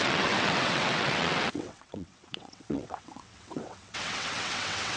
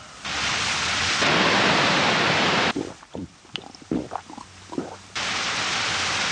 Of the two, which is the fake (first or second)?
first